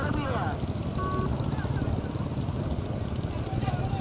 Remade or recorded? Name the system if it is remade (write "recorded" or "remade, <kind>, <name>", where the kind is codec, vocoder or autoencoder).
recorded